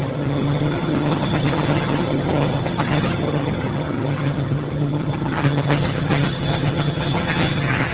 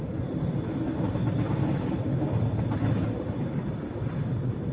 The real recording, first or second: second